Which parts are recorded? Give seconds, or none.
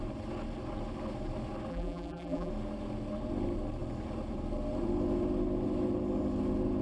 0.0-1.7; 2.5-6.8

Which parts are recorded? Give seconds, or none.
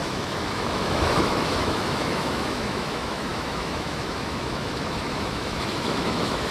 none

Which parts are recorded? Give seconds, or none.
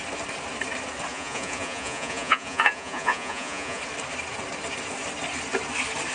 0.0-1.1; 3.8-6.1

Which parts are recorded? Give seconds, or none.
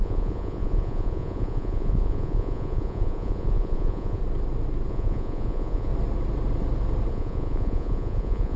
4.2-4.9; 5.9-7.1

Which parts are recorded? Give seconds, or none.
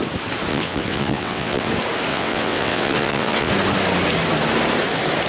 0.0-0.5; 1.7-2.1; 3.5-5.3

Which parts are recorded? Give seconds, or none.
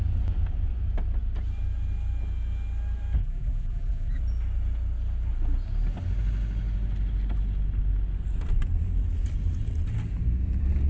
0.0-3.2; 4.2-10.9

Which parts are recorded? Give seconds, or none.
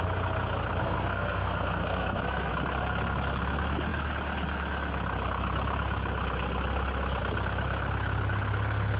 0.0-0.8; 2.5-9.0